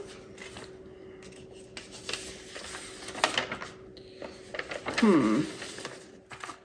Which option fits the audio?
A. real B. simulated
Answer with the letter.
A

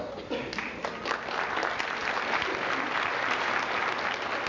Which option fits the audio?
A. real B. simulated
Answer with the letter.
A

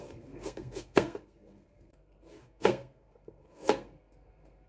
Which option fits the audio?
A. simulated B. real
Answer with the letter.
A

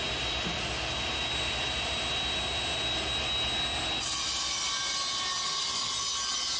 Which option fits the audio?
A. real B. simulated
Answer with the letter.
A